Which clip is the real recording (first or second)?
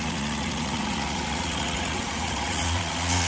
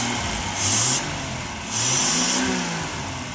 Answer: second